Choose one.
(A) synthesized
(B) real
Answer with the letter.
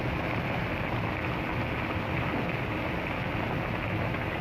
B